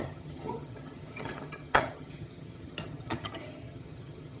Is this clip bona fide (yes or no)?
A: no